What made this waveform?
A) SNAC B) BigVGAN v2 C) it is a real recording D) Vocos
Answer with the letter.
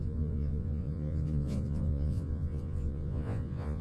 D